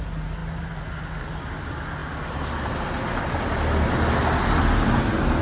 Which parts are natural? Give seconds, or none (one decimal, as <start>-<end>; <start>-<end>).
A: 0.0-5.4